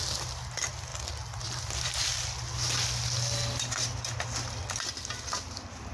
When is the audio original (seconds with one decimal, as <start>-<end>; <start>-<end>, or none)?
0.0-5.9